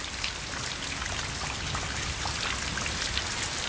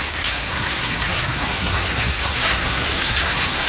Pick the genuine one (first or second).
first